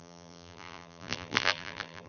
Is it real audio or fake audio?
fake